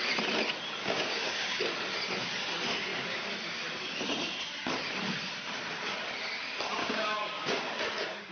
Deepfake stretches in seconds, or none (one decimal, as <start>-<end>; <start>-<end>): 0.8-1.6; 6.8-7.7